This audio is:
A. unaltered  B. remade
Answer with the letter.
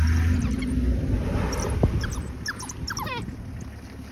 A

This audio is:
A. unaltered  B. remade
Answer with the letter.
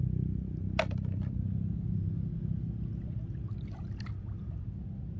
A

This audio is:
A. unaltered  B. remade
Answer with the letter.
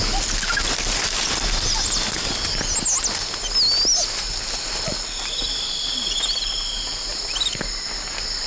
A